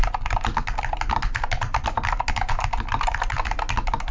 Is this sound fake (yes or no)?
no